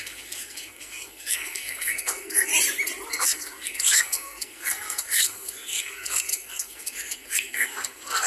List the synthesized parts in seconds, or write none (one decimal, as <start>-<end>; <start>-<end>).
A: 0.0-2.5; 3.1-8.3